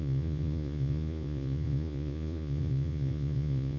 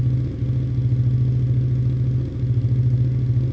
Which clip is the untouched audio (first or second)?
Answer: second